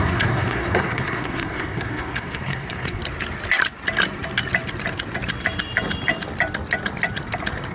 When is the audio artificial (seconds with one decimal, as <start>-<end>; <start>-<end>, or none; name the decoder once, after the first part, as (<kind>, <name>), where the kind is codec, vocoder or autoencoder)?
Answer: 0.0-3.0 (codec, SNAC)